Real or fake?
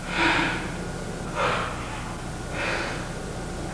real